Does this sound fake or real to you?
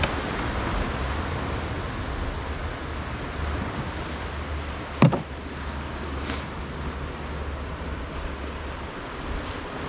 real